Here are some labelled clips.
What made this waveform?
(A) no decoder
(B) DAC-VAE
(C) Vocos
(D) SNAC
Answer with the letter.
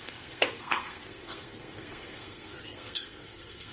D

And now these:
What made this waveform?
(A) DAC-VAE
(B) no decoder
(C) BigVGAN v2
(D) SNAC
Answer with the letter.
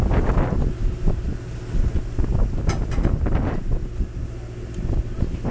B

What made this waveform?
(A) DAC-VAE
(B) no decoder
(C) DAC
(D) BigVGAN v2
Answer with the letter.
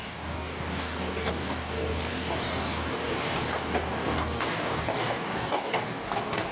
C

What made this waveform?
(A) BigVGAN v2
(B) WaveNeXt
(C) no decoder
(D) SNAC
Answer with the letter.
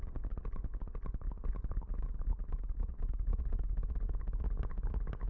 C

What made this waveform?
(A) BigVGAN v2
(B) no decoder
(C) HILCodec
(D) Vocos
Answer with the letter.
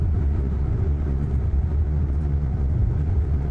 D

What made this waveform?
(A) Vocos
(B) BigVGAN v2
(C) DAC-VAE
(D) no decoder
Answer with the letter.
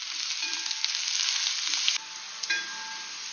D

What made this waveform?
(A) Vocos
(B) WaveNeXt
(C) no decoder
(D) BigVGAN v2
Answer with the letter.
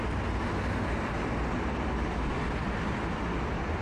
D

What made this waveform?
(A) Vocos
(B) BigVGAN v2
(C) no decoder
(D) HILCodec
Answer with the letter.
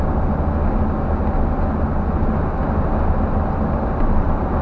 C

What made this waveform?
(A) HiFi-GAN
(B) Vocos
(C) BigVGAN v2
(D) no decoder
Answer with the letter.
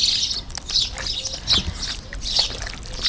D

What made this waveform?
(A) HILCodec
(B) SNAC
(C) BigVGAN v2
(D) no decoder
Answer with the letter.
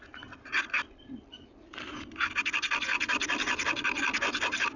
D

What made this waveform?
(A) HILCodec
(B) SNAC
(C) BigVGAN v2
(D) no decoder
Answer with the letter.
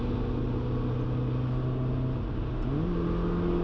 D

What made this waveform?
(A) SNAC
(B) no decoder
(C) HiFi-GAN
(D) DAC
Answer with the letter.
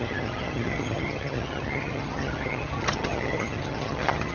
C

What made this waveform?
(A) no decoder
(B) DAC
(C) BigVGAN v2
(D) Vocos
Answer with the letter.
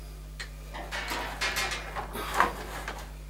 A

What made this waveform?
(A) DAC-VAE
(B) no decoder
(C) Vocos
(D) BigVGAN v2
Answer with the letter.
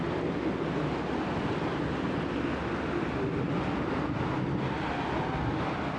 B